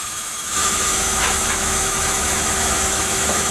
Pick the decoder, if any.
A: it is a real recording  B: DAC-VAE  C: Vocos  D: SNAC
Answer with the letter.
B